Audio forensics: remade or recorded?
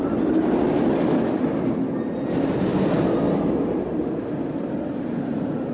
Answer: recorded